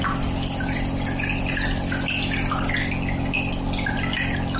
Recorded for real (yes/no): yes